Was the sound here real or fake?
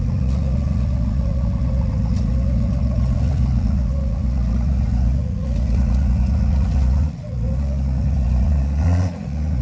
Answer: fake